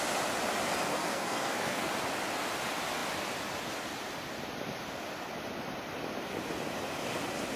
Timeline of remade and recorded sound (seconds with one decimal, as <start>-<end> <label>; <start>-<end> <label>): 0.0-0.9 recorded; 0.9-1.9 remade; 1.9-7.6 recorded